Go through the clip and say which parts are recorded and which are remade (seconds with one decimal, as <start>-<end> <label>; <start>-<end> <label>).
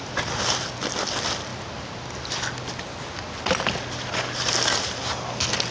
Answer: 0.0-5.7 recorded